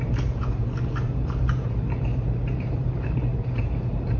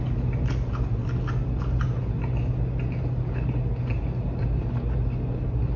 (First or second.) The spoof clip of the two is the first